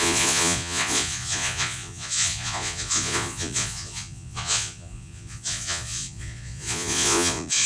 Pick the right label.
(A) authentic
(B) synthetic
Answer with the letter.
B